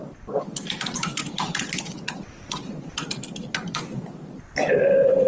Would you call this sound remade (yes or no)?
yes